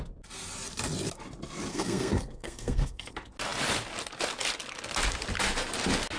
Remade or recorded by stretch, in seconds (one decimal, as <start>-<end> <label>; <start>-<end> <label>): 0.0-1.7 recorded; 1.7-3.1 remade; 3.1-6.2 recorded